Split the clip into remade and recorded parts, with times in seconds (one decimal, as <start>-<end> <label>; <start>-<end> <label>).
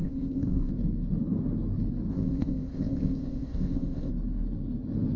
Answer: 0.0-0.7 remade; 0.7-2.1 recorded; 2.1-4.1 remade; 4.1-5.2 recorded